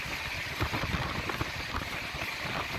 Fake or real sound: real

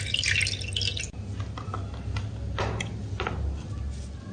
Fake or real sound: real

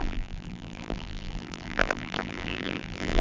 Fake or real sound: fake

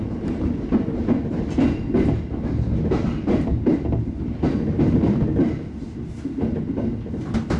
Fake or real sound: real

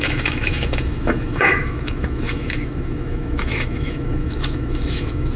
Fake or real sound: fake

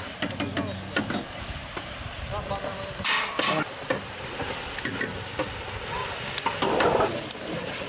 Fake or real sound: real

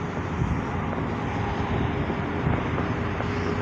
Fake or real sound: real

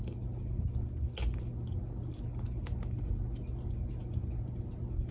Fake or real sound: real